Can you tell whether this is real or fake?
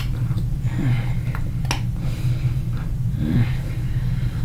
real